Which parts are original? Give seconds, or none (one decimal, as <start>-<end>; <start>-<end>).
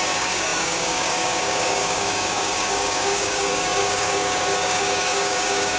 none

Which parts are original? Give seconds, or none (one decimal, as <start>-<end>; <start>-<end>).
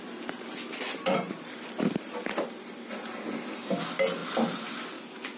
0.0-5.4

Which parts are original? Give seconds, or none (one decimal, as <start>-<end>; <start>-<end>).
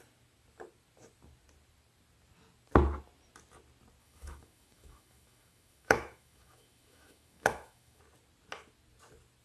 0.0-4.0; 8.0-9.4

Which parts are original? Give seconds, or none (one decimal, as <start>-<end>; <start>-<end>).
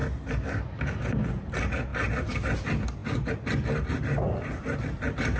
0.0-5.4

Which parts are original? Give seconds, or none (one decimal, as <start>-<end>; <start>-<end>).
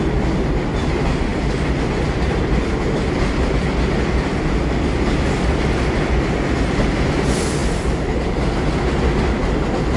0.0-10.0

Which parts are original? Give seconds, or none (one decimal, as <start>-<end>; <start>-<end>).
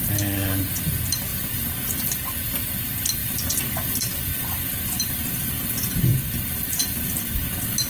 0.0-1.3; 1.9-3.2; 5.5-7.9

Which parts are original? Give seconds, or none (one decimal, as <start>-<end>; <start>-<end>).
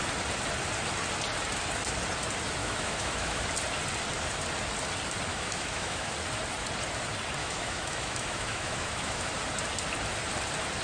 0.0-2.6; 3.4-5.3; 6.1-7.4; 9.3-10.8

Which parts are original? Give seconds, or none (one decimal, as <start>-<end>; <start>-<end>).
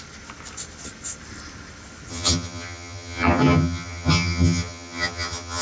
0.0-2.1